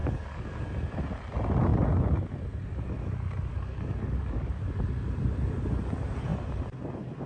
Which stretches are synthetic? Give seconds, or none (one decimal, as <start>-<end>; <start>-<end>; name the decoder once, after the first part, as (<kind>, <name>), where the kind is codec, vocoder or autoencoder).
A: 0.0-0.6 (codec, DAC); 3.5-4.6